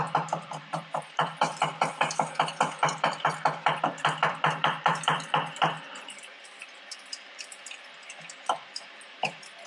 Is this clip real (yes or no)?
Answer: no